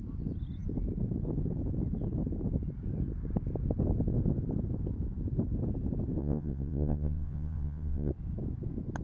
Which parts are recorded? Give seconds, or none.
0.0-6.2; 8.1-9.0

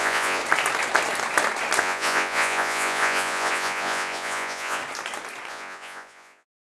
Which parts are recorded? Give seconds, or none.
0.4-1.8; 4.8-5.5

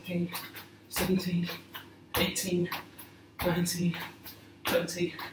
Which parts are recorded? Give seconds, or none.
1.2-2.6